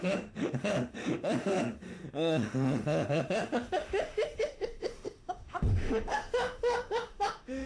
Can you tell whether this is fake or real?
fake